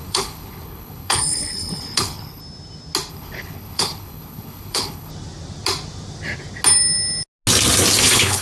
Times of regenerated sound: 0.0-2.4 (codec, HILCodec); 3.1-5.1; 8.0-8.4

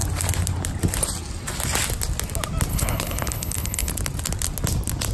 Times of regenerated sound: 2.7-3.9 (codec, HILCodec)

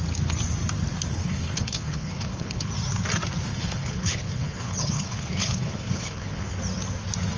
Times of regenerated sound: 1.1-2.7 (codec, HILCodec); 3.5-6.6